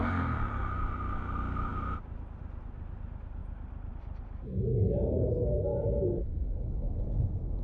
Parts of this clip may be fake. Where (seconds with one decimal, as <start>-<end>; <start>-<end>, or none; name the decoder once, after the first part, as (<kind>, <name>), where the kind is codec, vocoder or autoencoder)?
none